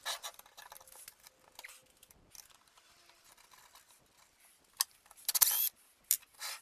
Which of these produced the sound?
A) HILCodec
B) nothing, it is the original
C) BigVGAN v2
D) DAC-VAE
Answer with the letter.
B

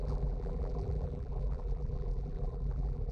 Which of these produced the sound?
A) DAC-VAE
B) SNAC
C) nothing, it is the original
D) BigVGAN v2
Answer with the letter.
D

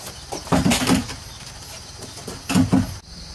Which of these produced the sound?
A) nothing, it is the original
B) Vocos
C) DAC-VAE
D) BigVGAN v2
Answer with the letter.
A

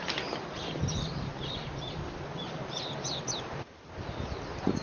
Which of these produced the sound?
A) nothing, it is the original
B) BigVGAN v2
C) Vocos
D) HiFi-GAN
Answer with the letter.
A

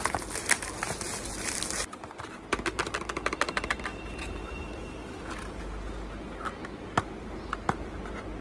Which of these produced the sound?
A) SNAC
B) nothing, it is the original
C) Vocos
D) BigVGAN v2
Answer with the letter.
B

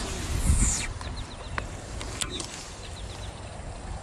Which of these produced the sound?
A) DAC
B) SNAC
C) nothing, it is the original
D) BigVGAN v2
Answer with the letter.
C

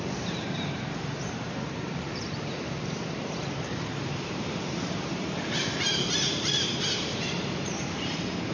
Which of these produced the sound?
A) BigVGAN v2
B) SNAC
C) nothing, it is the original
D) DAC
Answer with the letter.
A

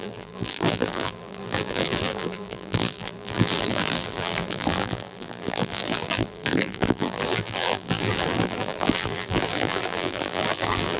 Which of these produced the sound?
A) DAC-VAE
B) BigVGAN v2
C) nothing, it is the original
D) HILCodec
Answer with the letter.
B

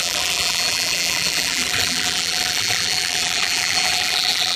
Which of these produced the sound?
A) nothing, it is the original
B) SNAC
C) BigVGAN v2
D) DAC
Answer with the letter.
C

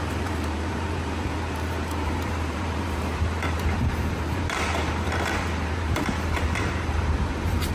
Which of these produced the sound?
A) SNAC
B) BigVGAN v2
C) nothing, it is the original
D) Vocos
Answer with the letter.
B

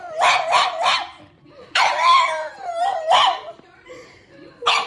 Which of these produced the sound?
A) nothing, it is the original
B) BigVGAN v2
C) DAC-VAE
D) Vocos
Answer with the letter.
B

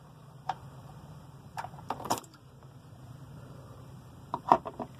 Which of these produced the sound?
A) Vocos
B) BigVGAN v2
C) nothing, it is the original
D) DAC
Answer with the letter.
B